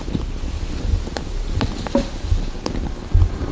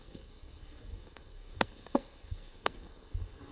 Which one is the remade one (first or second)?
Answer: second